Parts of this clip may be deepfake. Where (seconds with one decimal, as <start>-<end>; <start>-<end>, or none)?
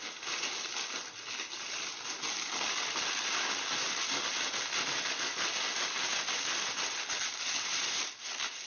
none